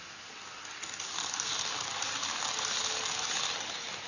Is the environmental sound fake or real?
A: real